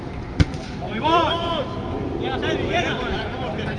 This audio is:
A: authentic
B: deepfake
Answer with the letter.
B